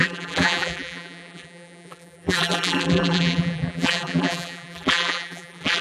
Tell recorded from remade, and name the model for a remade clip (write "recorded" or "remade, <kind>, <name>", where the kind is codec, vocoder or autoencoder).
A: remade, vocoder, BigVGAN v2